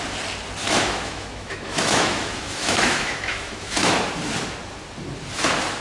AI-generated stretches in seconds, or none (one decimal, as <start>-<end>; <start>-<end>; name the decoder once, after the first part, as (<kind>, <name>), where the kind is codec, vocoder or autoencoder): 0.6-4.1 (autoencoder, DAC-VAE)